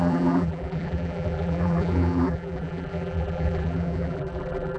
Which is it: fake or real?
fake